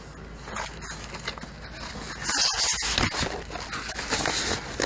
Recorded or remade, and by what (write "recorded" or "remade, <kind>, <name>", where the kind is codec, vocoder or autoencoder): recorded